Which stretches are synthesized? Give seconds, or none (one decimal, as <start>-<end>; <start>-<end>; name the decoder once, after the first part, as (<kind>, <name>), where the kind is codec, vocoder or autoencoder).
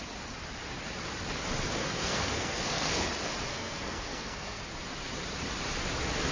1.8-3.1 (codec, SNAC); 3.5-4.6